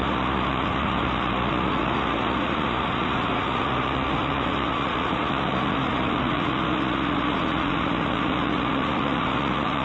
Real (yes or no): no